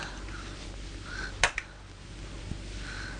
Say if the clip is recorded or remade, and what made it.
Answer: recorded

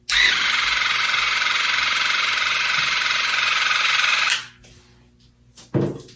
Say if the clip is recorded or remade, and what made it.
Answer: recorded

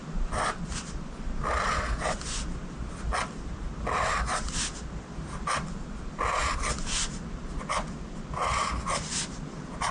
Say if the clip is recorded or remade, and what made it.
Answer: recorded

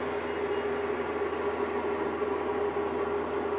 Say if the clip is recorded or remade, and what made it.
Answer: recorded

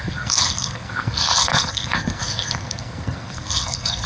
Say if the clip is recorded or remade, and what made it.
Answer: remade, codec, SNAC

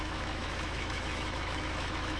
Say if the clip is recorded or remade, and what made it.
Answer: remade, autoencoder, DAC-VAE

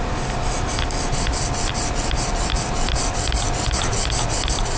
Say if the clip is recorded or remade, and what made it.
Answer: recorded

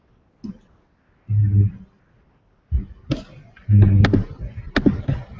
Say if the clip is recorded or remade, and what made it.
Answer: recorded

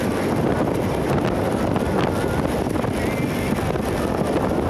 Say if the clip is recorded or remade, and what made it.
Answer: recorded